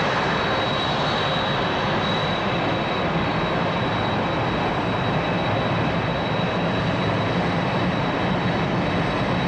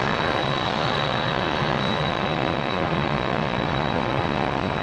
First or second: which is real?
first